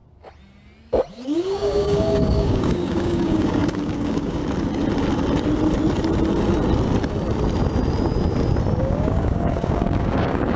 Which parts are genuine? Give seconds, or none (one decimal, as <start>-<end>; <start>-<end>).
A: 0.0-1.1; 4.4-8.8